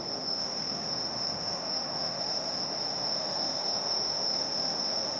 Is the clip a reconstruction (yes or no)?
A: yes